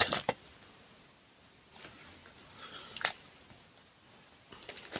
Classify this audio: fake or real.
real